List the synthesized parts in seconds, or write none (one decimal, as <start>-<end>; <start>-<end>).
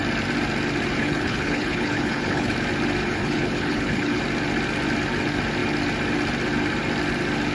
1.0-2.5; 3.0-4.2